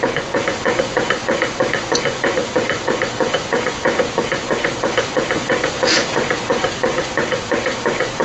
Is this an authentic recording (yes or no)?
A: no